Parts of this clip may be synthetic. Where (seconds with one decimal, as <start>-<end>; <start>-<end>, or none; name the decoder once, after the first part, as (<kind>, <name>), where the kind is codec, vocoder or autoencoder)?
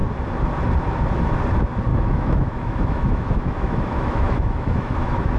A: 1.9-5.4 (autoencoder, DAC-VAE)